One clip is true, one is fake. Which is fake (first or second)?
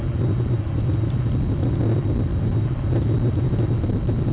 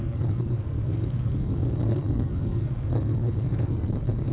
second